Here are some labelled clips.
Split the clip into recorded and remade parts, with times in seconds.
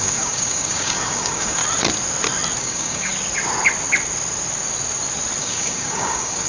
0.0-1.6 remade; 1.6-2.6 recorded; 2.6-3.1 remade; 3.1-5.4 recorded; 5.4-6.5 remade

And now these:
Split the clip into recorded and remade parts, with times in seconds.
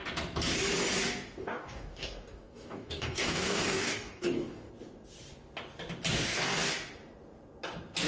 0.0-1.4 recorded; 1.4-4.7 remade; 4.7-8.1 recorded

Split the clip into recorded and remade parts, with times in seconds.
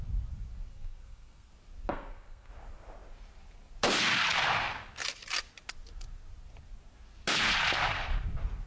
0.0-0.7 recorded; 0.7-1.5 remade; 1.5-1.9 recorded; 1.9-2.5 remade; 2.5-8.7 recorded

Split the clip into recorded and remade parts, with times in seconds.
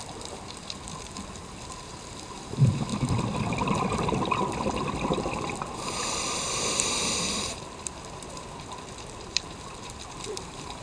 0.0-2.9 remade; 2.9-3.5 recorded; 3.5-10.8 remade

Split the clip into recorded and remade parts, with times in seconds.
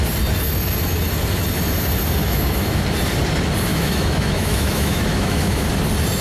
0.0-2.2 recorded; 2.2-2.8 remade; 2.8-3.7 recorded; 3.7-5.7 remade; 5.7-6.2 recorded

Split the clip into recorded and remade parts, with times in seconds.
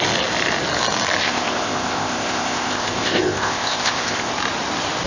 0.0-1.2 recorded; 1.2-4.3 remade; 4.3-5.1 recorded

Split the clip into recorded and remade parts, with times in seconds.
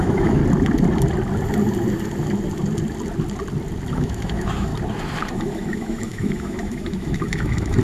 0.0-0.4 remade; 0.4-3.9 recorded; 3.9-4.7 remade; 4.7-5.3 recorded; 5.3-7.8 remade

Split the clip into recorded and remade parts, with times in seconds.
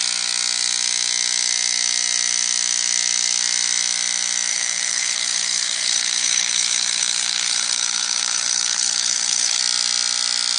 0.0-4.5 recorded; 4.5-9.6 remade; 9.6-10.6 recorded